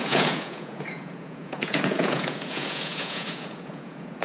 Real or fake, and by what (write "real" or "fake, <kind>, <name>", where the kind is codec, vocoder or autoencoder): fake, vocoder, Vocos